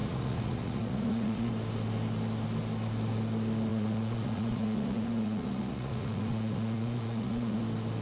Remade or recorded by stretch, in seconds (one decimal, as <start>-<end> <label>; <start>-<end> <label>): 0.0-1.5 remade; 1.5-3.7 recorded; 3.7-7.6 remade; 7.6-8.0 recorded